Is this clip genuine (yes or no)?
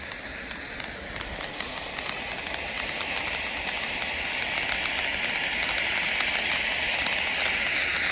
yes